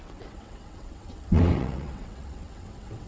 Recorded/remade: remade